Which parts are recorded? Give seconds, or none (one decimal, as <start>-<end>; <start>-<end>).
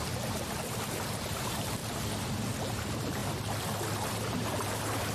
1.8-2.3; 3.2-4.2